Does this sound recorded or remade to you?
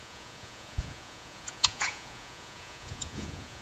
remade